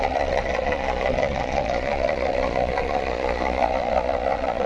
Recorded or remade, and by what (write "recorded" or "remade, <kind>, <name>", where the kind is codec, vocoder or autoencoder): remade, vocoder, Vocos